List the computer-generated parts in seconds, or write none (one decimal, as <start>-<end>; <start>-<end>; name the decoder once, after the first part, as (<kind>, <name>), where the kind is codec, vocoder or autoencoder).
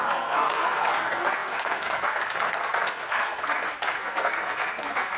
0.0-5.2 (codec, SNAC)